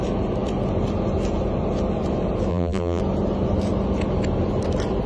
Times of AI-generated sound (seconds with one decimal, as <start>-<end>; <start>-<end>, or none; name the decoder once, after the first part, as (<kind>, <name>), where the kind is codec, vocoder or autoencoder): 2.5-3.0 (vocoder, BigVGAN v2)

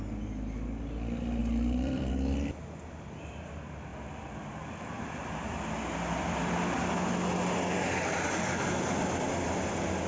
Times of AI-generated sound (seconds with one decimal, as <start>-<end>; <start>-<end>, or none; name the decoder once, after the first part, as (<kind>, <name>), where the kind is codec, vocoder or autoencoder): 1.4-2.1 (vocoder, BigVGAN v2); 3.9-4.9

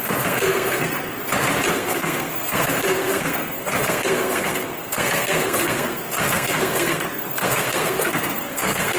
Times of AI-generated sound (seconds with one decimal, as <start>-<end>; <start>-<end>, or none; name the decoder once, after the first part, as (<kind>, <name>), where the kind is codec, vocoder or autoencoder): 0.0-1.2 (codec, SNAC); 1.7-9.0

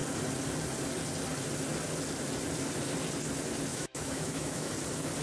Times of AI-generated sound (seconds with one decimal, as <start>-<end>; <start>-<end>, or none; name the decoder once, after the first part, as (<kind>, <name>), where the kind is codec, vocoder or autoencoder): 3.7-4.7 (autoencoder, DAC-VAE)